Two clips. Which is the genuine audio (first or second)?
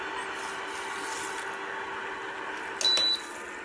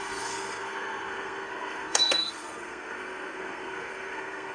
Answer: first